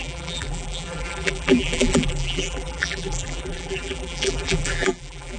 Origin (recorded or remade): remade